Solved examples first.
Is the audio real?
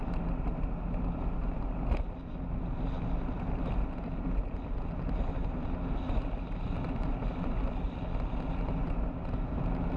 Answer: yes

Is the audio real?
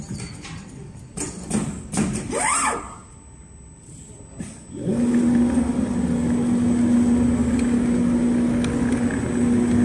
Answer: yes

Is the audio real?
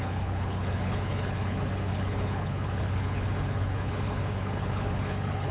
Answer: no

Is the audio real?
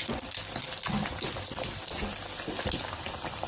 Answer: yes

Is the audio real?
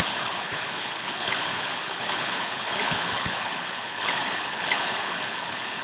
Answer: no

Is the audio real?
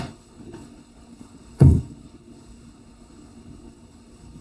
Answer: no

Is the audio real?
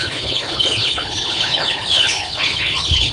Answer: no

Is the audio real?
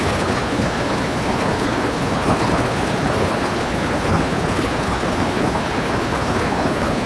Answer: no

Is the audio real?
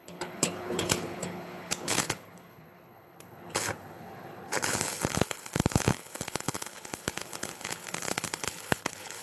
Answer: no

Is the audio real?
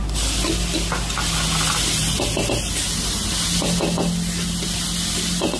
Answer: yes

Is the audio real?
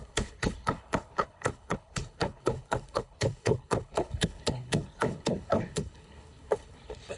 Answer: no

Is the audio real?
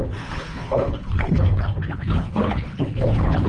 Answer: no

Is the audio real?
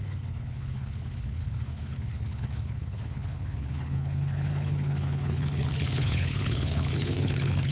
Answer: no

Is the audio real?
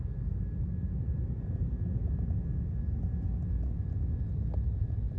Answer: yes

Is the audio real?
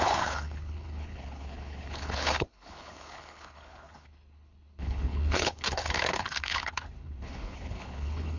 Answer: no